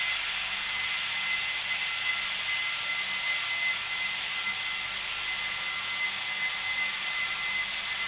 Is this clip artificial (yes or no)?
no